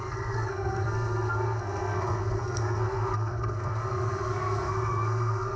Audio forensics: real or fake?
fake